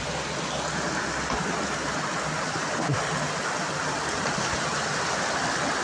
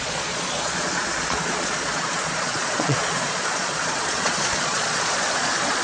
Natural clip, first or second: first